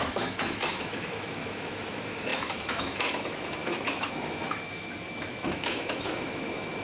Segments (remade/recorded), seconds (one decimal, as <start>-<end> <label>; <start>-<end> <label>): 0.0-6.8 remade